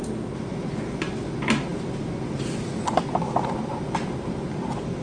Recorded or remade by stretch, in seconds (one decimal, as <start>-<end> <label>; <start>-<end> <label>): 0.0-5.0 recorded